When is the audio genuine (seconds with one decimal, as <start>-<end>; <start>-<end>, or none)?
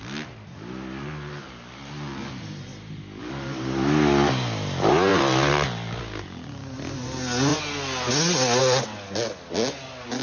0.0-10.2